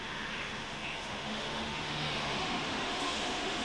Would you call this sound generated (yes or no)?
yes